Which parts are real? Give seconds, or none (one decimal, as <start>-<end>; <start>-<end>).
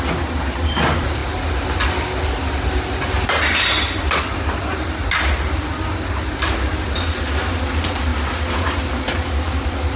0.0-10.0